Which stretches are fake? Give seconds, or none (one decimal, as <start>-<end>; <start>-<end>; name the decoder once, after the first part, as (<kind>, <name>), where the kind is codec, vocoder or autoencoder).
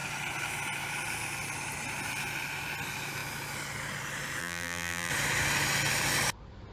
4.4-5.1 (vocoder, BigVGAN v2)